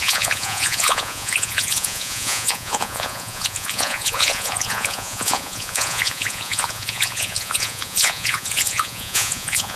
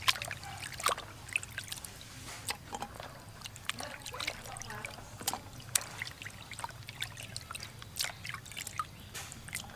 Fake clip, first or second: first